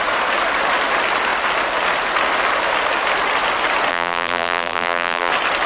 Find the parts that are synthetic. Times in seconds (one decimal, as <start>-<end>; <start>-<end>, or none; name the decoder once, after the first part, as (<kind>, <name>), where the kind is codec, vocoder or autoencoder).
3.9-5.3 (vocoder, BigVGAN v2)